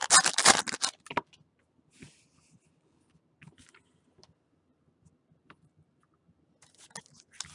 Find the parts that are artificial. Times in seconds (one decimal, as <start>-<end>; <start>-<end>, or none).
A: none